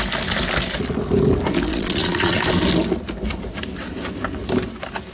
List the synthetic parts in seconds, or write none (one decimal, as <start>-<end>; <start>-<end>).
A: 1.7-2.4